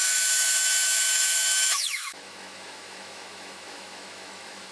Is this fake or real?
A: fake